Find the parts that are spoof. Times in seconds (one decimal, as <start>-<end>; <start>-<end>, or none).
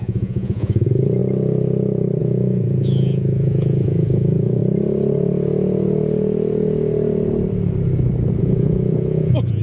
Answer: 0.0-1.2; 2.2-4.6; 8.4-9.6